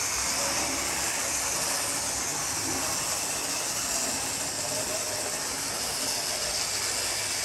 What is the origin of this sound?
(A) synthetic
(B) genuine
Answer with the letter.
B